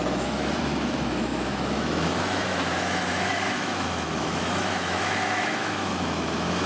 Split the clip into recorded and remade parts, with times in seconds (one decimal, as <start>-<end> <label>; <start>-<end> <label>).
0.0-6.7 remade